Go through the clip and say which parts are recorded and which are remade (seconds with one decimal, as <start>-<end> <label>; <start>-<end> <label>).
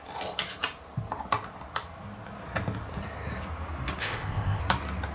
0.0-4.0 recorded; 4.0-4.6 remade; 4.6-5.1 recorded